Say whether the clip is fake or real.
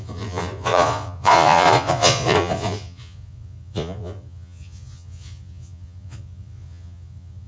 fake